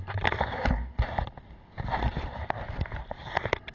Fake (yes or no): yes